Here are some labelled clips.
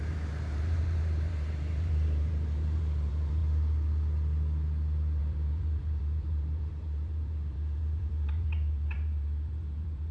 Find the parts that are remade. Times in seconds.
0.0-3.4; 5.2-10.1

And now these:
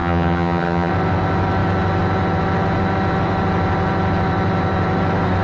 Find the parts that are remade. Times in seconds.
0.0-0.9

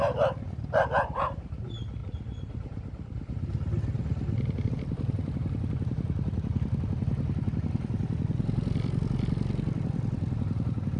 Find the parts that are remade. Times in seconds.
none

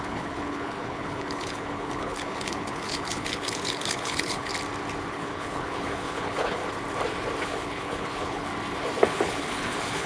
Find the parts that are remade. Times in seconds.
0.0-4.5; 5.1-6.6; 7.4-8.5; 9.1-10.1

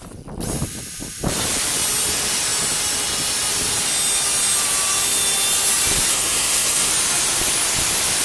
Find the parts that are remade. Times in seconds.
6.1-6.9

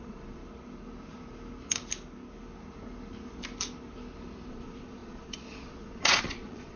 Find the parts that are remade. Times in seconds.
0.0-0.4; 4.5-6.8

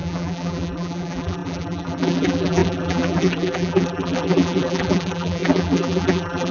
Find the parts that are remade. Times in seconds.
0.0-6.5

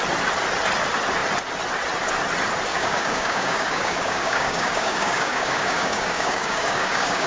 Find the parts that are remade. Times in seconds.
2.7-7.3